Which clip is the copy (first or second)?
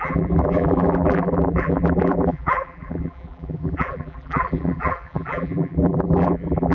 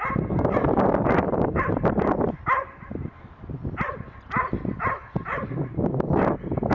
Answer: first